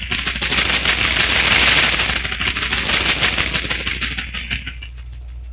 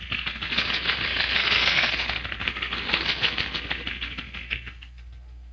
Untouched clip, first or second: first